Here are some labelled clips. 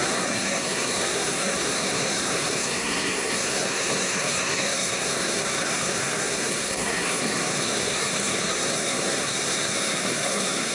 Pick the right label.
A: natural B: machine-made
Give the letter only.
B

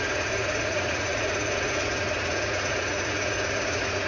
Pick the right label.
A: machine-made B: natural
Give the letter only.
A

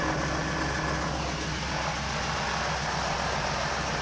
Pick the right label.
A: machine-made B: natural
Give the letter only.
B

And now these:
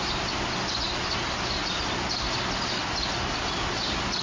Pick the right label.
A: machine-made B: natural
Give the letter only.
B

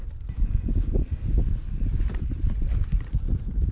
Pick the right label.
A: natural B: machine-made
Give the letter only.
A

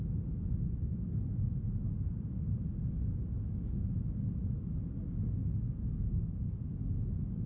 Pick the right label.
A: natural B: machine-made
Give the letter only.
A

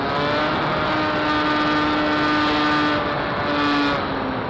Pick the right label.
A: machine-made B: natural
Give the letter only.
B